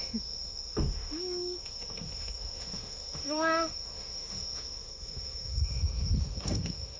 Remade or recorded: remade